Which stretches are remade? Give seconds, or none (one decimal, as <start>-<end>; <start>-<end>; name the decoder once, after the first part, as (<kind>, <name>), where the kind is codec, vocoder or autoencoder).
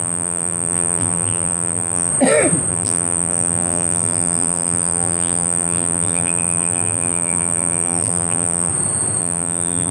0.0-2.1 (vocoder, BigVGAN v2); 2.7-8.7; 9.2-9.9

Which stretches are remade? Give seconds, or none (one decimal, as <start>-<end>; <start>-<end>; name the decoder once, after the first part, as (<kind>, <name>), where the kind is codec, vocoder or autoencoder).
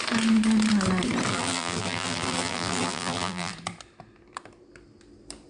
1.3-3.5 (vocoder, BigVGAN v2)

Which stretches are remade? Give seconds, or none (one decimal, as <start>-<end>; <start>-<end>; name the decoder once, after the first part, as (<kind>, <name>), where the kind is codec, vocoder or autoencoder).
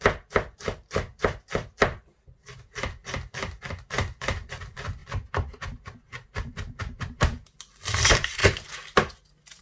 3.0-3.6 (vocoder, BigVGAN v2)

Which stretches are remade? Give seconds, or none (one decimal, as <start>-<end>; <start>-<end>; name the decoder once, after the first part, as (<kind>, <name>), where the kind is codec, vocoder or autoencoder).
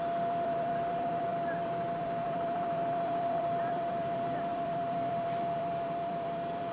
0.0-6.7 (vocoder, BigVGAN v2)